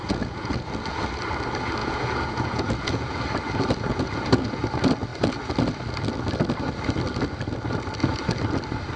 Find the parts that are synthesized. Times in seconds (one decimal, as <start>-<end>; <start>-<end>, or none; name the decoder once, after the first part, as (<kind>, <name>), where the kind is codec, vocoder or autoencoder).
0.0-0.7 (vocoder, Vocos); 1.8-3.2; 3.9-4.6